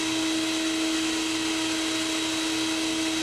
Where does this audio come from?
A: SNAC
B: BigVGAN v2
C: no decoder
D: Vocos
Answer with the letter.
C